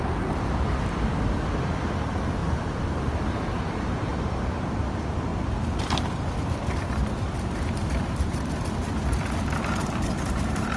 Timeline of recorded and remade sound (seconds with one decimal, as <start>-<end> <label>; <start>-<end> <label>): 0.0-2.4 recorded; 2.4-3.4 remade; 3.4-4.1 recorded; 4.1-4.6 remade; 4.6-9.8 recorded; 9.8-10.8 remade